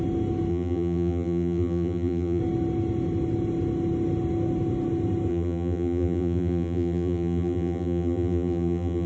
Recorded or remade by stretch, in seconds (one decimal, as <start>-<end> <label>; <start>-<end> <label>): 0.0-0.5 recorded; 0.5-2.4 remade; 2.4-5.3 recorded; 5.3-9.1 remade